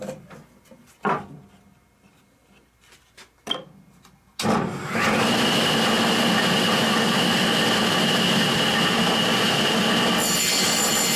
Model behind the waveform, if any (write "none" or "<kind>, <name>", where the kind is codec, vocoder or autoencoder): none